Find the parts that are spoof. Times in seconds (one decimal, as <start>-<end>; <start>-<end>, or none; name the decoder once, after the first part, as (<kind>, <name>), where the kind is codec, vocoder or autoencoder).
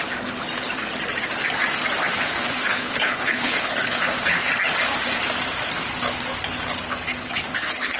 2.1-4.5 (codec, HILCodec); 7.3-8.0